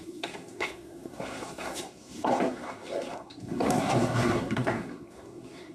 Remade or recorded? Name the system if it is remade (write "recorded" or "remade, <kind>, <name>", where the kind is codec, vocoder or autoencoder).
remade, codec, SNAC